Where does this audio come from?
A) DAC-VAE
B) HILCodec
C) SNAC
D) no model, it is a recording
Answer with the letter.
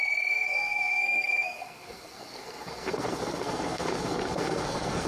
C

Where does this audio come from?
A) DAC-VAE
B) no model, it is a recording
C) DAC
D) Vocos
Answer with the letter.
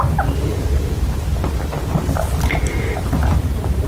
B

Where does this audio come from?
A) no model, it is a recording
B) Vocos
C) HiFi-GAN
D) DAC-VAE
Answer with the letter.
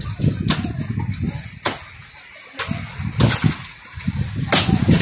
A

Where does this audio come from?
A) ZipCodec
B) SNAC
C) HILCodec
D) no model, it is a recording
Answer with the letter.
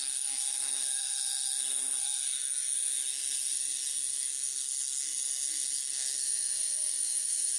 B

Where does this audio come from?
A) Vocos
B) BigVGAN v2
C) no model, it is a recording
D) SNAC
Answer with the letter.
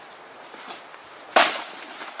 C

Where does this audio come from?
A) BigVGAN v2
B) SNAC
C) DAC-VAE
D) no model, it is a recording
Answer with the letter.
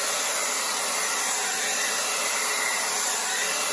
D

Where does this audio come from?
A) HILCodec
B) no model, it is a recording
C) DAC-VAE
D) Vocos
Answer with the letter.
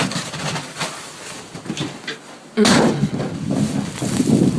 B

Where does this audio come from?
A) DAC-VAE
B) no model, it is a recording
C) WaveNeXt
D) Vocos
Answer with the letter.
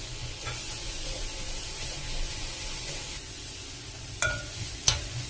D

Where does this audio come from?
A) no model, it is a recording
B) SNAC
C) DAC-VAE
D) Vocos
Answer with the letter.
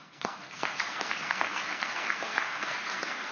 B